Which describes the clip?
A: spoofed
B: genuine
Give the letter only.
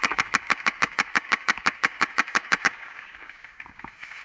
A